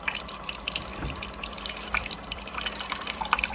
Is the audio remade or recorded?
remade